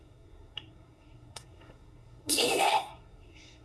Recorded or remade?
remade